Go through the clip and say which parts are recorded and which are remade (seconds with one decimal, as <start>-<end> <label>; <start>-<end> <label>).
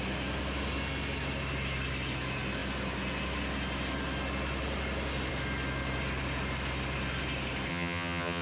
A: 0.0-7.7 recorded; 7.7-8.4 remade